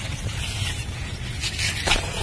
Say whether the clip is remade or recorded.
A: recorded